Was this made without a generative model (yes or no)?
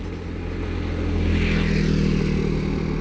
yes